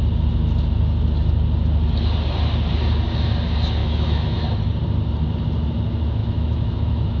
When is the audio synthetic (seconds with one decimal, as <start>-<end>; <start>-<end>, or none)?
3.8-4.4; 6.2-7.2